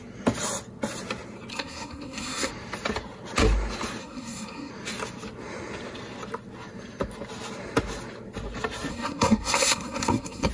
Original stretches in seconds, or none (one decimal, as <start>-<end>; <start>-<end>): 0.0-1.5; 2.5-4.0; 4.7-8.9